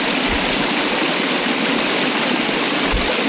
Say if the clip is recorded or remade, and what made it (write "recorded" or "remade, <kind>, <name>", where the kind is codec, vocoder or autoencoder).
recorded